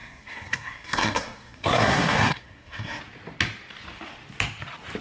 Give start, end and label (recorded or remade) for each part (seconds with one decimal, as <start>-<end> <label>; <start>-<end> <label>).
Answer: 0.0-3.0 remade; 3.0-5.0 recorded